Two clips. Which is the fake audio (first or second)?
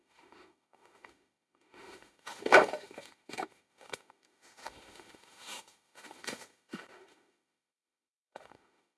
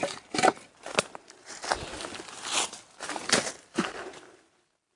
first